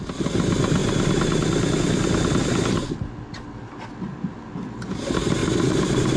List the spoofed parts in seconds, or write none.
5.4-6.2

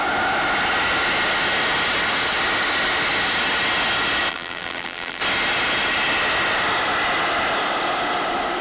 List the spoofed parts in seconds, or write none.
4.3-5.2

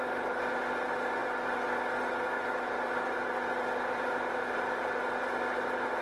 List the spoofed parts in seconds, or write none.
none

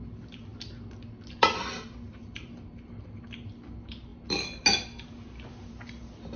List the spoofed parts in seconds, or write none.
none

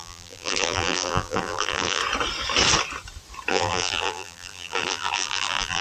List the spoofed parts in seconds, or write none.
0.0-2.0; 3.5-5.8

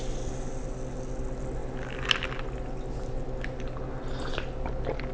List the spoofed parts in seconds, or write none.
none

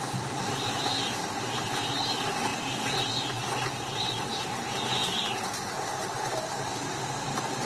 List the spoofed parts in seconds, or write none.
0.0-5.0; 5.9-7.7

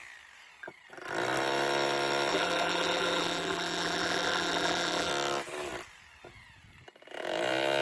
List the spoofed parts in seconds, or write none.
2.3-5.1